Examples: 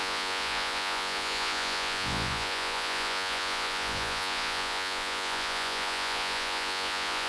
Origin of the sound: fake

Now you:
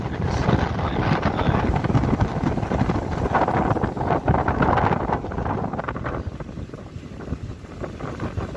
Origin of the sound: real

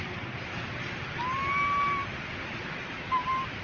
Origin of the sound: real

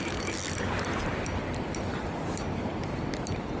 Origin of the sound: real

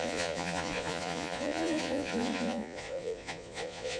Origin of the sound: fake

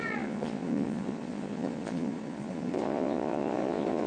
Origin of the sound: fake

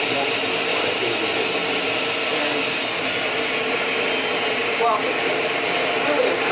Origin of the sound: real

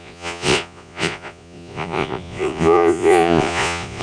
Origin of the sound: fake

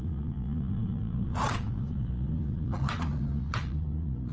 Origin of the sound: fake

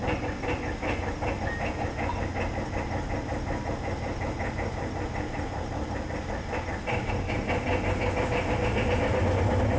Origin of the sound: real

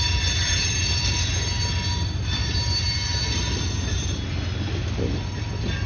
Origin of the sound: real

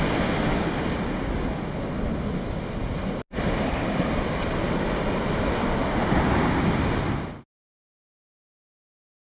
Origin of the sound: real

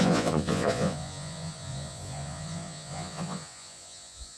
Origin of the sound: fake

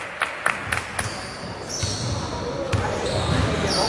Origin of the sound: real